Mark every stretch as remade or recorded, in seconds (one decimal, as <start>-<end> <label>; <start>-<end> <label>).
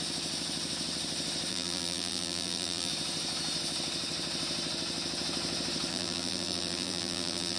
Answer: 0.0-1.5 recorded; 1.5-2.9 remade; 2.9-5.9 recorded; 5.9-7.6 remade